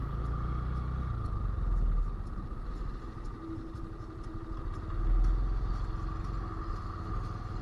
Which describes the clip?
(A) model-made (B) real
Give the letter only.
B